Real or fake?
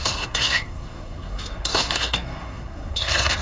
fake